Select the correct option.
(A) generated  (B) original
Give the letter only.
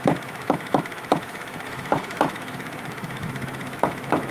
A